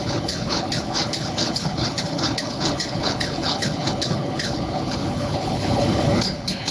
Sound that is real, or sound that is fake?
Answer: fake